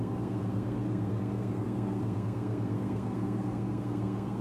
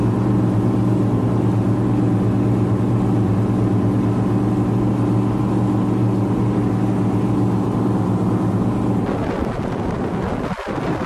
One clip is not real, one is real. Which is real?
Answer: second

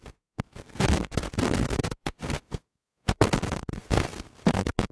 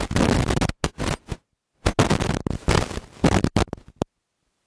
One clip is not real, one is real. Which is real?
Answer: second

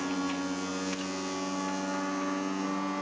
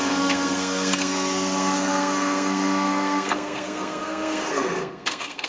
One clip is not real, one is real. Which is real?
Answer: first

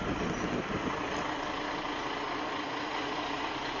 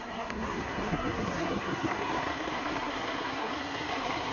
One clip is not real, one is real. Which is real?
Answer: first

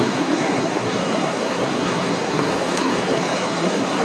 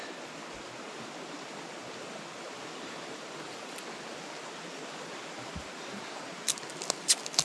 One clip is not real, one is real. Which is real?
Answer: second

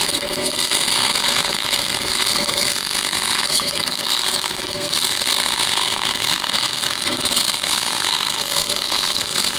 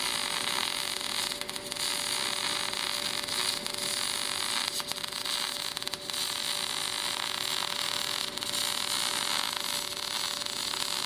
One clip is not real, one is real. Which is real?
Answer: second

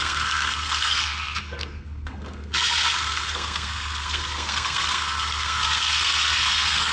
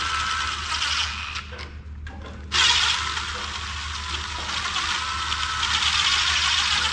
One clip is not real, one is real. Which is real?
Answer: second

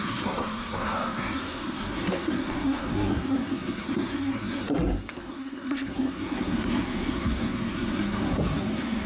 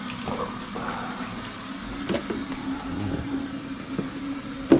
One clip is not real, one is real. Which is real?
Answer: second